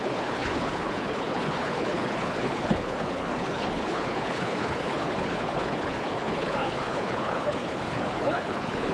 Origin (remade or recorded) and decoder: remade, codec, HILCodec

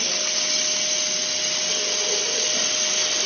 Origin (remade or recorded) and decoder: recorded